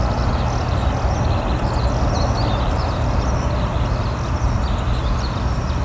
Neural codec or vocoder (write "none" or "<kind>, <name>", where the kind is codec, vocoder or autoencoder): none